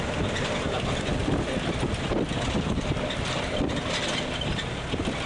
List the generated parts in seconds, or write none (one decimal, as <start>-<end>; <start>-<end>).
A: 1.2-3.6